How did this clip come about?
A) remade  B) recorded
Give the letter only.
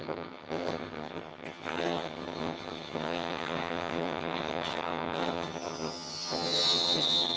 A